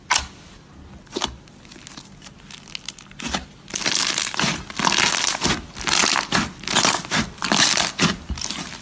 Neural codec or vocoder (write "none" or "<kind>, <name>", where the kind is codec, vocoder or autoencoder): none